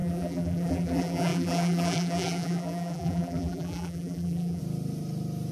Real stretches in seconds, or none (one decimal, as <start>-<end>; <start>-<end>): 4.6-5.5